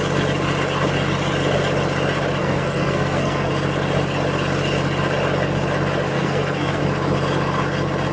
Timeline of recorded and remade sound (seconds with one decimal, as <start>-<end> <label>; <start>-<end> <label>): 0.0-2.4 recorded; 2.4-3.5 remade; 3.5-6.1 recorded; 6.1-6.8 remade; 6.8-8.1 recorded